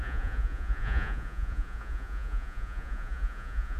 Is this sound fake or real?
fake